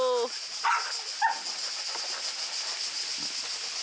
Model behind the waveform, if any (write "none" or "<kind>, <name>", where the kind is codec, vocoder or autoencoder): none